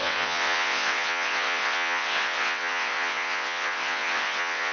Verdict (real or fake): fake